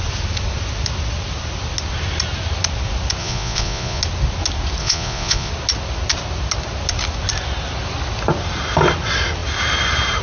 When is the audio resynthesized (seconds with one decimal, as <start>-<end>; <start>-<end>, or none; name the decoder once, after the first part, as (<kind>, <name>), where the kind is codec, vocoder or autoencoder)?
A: 3.2-4.0 (vocoder, Vocos); 4.8-5.5